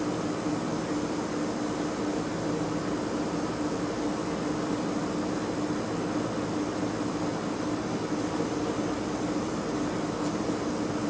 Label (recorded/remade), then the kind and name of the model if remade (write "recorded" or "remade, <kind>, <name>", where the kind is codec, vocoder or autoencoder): recorded